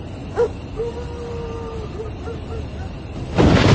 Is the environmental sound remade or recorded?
recorded